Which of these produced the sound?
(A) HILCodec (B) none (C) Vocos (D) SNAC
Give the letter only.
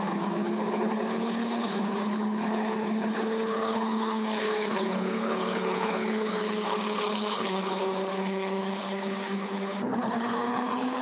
A